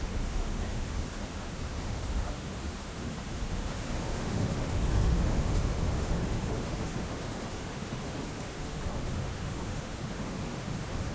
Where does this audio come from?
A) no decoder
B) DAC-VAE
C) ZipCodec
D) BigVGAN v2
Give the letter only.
B